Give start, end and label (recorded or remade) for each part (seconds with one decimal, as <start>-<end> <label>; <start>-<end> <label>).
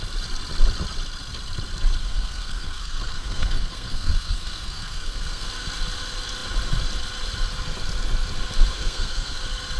0.0-2.0 recorded; 2.0-5.5 remade; 5.5-8.7 recorded; 8.7-9.4 remade; 9.4-9.8 recorded